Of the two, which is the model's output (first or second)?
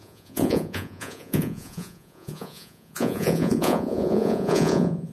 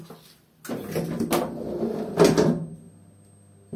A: first